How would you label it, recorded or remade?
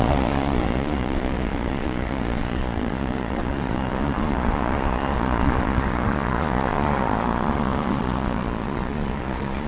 remade